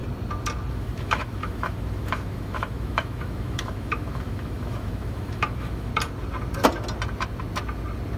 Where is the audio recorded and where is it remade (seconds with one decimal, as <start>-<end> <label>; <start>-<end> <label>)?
0.0-0.7 recorded; 0.7-5.9 remade; 5.9-8.2 recorded